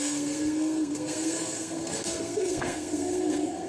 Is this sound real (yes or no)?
no